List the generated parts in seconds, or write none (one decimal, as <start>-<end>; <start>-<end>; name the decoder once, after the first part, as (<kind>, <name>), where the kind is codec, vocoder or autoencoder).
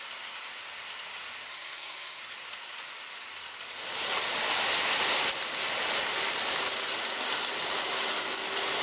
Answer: 1.5-2.2 (codec, SNAC)